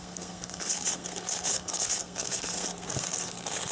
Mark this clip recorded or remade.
remade